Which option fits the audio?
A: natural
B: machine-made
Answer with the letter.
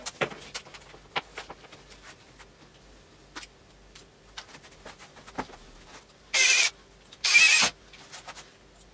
A